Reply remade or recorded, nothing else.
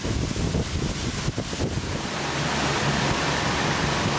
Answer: recorded